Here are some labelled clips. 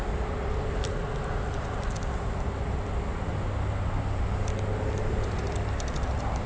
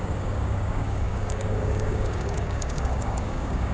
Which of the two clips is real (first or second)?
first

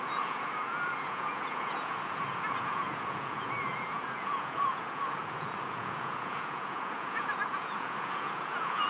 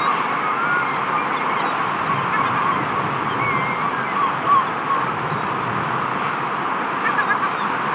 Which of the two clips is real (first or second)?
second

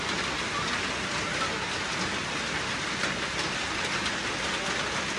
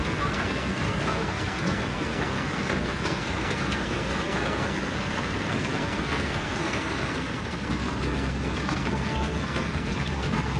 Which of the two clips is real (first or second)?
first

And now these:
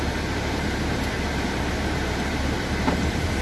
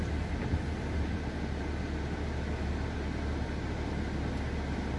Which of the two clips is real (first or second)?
second